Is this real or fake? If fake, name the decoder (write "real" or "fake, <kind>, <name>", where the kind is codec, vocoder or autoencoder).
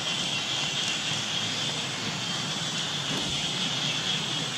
real